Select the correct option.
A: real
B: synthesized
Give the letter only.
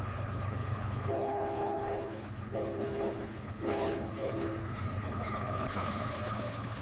B